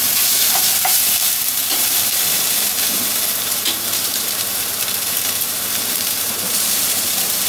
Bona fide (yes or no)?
no